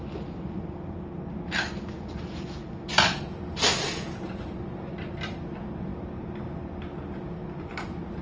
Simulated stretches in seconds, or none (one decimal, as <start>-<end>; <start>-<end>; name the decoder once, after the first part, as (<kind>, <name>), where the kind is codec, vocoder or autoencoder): none